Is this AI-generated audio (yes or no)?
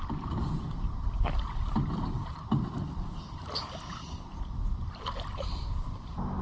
no